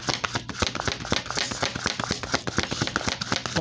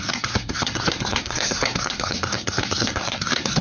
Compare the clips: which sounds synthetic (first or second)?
second